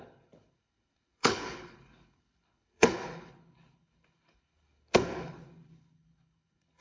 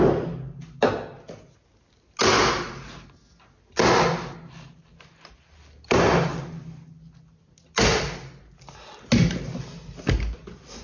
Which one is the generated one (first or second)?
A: first